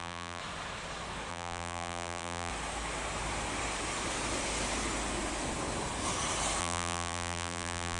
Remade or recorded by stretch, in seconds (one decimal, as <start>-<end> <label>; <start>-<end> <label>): 0.0-0.4 remade; 0.4-1.3 recorded; 1.3-2.5 remade; 2.5-6.6 recorded; 6.6-8.0 remade